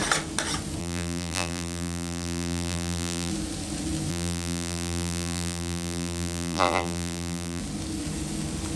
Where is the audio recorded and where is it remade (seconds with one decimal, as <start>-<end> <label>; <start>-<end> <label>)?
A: 0.0-0.8 recorded; 0.8-3.3 remade; 3.3-4.1 recorded; 4.1-7.6 remade; 7.6-8.8 recorded